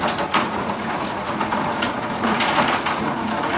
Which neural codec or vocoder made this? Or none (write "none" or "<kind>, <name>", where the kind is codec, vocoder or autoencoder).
vocoder, Vocos